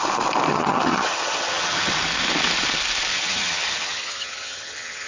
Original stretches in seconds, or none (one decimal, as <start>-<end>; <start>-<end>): 0.0-0.5; 1.9-3.1